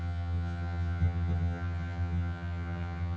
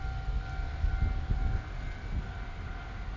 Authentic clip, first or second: second